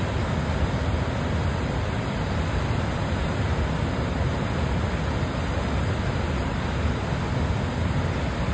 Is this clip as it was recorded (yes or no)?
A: yes